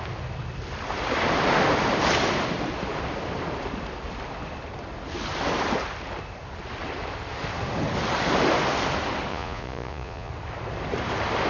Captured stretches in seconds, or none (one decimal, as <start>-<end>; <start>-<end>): 0.0-9.3; 10.3-11.5